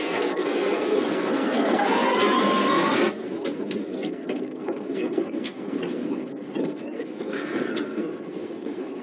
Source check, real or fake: fake